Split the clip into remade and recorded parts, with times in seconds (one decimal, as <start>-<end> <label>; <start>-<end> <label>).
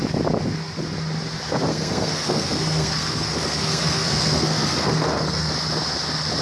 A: 0.0-1.7 recorded; 1.7-5.5 remade; 5.5-6.4 recorded